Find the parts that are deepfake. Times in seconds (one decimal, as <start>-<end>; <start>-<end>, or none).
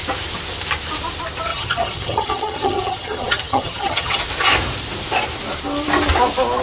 1.5-4.2